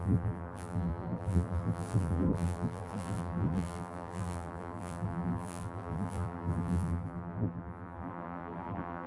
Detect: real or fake fake